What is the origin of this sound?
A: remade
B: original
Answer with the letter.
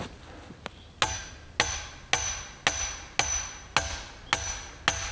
B